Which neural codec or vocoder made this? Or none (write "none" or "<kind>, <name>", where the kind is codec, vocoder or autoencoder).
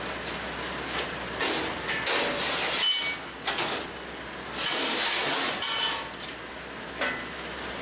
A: none